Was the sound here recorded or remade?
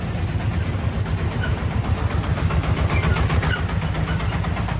recorded